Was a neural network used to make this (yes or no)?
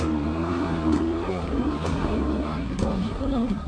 yes